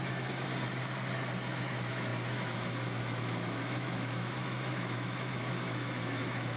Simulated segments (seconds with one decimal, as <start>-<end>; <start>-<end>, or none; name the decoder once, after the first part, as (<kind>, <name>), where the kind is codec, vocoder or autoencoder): 0.0-0.5 (autoencoder, DAC-VAE); 1.5-6.6